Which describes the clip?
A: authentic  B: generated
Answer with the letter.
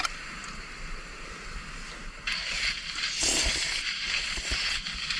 A